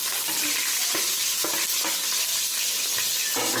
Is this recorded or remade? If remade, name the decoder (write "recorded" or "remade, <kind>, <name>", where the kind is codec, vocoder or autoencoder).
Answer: recorded